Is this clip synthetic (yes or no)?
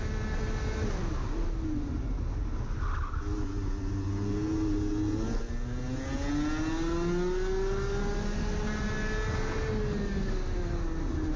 no